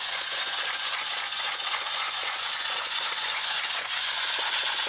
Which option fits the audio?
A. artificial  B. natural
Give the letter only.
A